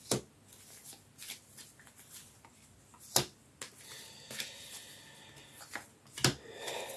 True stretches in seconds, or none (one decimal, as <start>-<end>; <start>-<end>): 0.0-7.0